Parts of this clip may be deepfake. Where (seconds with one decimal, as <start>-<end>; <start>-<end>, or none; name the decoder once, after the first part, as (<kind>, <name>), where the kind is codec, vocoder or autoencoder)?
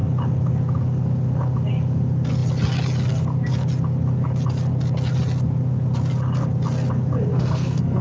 7.3-8.0 (codec, SNAC)